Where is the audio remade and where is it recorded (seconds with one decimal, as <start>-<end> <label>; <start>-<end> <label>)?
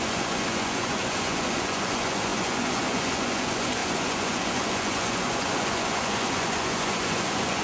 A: 0.0-7.6 remade